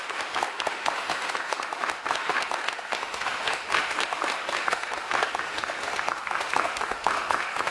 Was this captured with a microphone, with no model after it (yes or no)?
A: no